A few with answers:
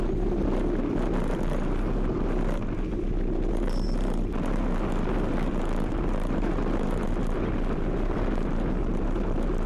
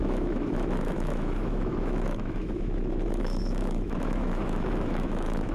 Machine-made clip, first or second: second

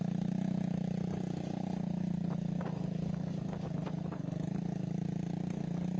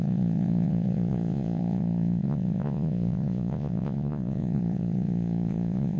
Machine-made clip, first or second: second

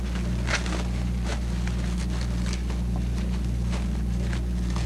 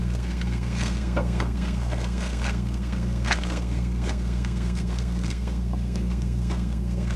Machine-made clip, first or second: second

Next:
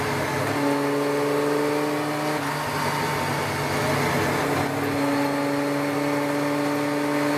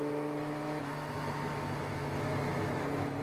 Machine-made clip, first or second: second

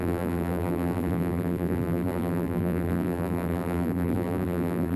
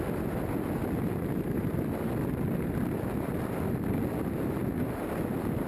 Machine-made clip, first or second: first